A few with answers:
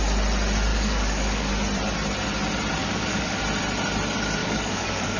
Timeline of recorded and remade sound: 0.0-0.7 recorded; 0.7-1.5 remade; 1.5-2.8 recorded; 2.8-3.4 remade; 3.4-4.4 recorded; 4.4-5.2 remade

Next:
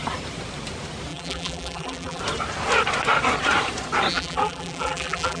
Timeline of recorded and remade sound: 0.0-1.1 recorded; 1.1-2.2 remade; 2.2-4.1 recorded; 4.1-5.4 remade

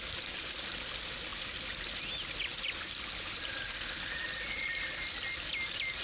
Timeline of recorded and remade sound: 0.0-6.0 recorded

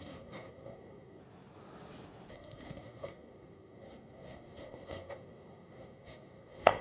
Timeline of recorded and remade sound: 0.0-1.2 remade; 1.2-2.3 recorded; 2.3-6.8 remade